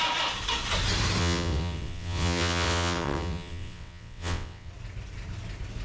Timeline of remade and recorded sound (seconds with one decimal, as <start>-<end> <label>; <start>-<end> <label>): 0.0-1.2 recorded; 1.2-4.7 remade; 4.7-5.8 recorded